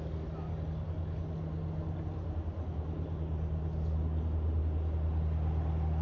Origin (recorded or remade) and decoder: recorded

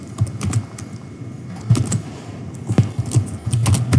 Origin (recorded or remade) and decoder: recorded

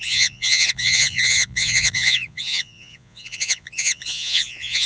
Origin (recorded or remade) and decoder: remade, vocoder, Vocos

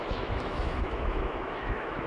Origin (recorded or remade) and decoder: remade, autoencoder, DAC-VAE